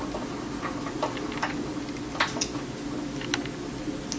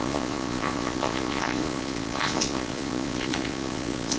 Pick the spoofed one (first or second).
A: second